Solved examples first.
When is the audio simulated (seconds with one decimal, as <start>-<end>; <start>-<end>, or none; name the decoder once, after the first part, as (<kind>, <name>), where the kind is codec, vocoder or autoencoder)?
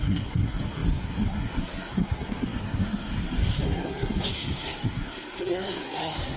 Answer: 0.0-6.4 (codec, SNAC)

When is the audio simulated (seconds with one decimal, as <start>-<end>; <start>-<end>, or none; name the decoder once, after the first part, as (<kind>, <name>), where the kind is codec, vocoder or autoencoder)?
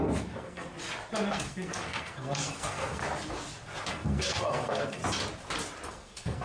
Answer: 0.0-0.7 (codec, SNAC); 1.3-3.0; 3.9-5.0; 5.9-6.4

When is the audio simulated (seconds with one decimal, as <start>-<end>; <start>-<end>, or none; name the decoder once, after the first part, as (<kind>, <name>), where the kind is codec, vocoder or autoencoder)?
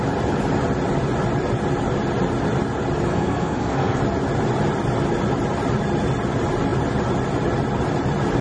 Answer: 3.1-4.0 (codec, SNAC)